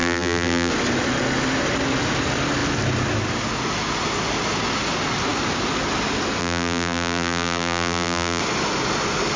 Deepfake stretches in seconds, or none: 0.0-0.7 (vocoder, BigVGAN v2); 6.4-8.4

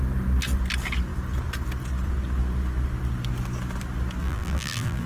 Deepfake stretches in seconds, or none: 4.2-5.1 (vocoder, BigVGAN v2)

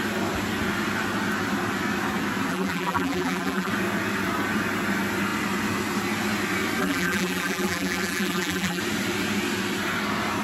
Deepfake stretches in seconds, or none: 2.5-3.7 (vocoder, BigVGAN v2); 6.8-8.8

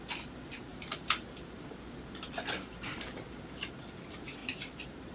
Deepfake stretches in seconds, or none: 0.7-3.8 (vocoder, BigVGAN v2); 4.4-5.1